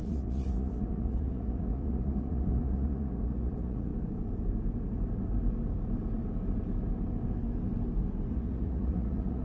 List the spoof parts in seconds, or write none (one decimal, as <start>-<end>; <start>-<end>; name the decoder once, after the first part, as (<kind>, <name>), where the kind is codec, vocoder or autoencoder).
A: 0.0-3.9 (vocoder, Vocos); 8.3-9.4